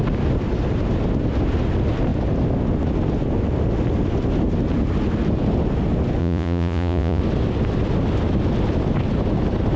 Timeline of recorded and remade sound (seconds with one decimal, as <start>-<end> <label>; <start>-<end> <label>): 0.0-6.2 recorded; 6.2-7.2 remade; 7.2-9.8 recorded

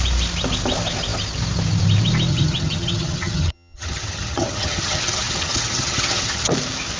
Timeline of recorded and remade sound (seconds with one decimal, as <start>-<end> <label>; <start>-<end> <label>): 0.0-2.3 recorded; 2.3-6.5 remade; 6.5-7.0 recorded

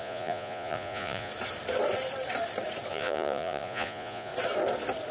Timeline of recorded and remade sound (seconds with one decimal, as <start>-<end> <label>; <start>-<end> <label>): 0.0-1.3 remade; 1.3-2.9 recorded; 2.9-4.3 remade; 4.3-5.1 recorded

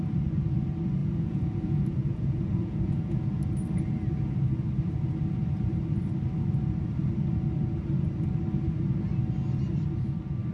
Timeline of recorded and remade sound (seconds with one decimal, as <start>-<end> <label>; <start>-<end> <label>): 0.0-1.0 recorded; 1.0-3.4 remade; 3.4-10.5 recorded

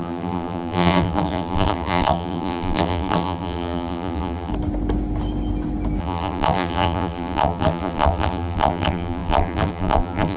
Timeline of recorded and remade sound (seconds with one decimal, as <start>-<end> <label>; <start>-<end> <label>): 0.0-4.5 remade; 4.5-6.0 recorded; 6.0-10.4 remade

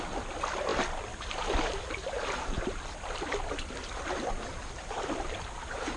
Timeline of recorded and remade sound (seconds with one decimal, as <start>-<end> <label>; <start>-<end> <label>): 0.0-6.0 recorded

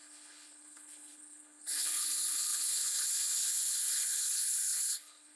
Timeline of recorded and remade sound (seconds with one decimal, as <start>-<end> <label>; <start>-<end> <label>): 0.0-5.4 remade

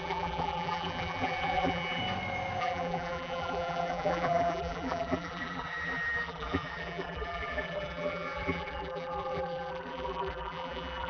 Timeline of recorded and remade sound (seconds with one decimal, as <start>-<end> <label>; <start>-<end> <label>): 0.0-2.0 remade; 2.0-2.6 recorded; 2.6-11.1 remade